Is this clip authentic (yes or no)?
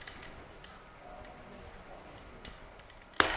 yes